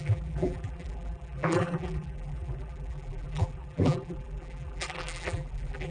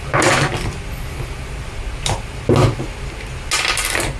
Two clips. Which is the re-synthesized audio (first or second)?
first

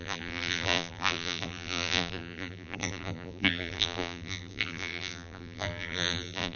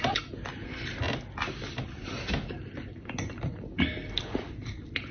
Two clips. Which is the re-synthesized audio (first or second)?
first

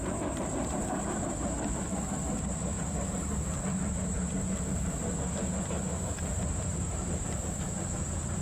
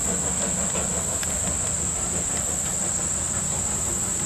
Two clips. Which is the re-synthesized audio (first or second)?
first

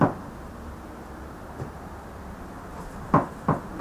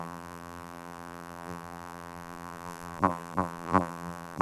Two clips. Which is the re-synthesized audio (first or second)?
second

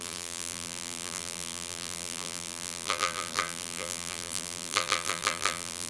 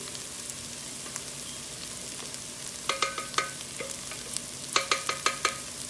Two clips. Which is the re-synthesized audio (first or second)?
first